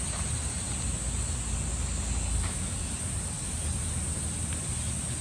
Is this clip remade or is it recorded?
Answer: recorded